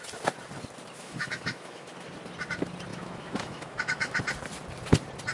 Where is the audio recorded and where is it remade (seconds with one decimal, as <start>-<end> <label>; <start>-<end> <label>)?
0.0-1.0 recorded; 1.0-1.9 remade; 1.9-2.9 recorded; 2.9-4.2 remade; 4.2-5.3 recorded